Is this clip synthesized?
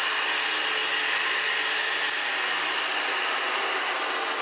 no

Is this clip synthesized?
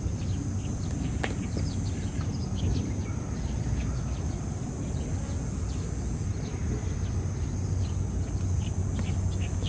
no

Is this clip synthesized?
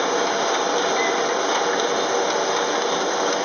no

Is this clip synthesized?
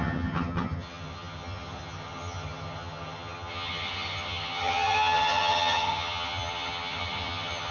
yes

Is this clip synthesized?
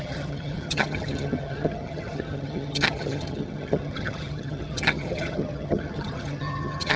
yes